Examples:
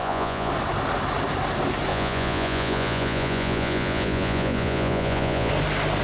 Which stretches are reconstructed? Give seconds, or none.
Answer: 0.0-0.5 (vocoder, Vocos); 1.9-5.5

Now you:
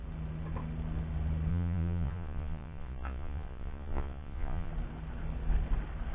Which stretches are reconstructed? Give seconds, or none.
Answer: 1.5-4.7 (vocoder, Vocos)

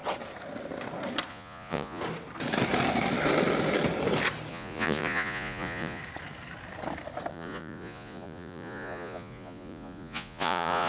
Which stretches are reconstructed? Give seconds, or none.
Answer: 1.3-2.0 (vocoder, Vocos); 4.5-6.0; 7.3-10.9